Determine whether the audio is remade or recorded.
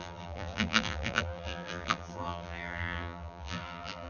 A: remade